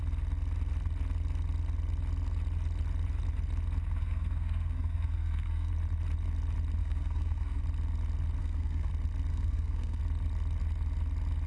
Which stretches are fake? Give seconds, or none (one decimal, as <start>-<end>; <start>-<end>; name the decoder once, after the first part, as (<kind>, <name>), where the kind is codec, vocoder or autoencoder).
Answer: 4.0-5.7 (codec, SNAC); 6.8-7.6; 8.4-8.9; 9.3-10.0